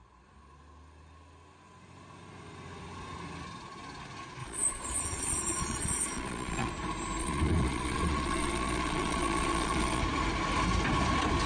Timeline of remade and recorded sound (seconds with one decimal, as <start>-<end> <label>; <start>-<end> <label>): 0.0-4.4 recorded; 4.4-6.7 remade; 6.7-7.2 recorded; 7.2-10.0 remade; 10.0-11.5 recorded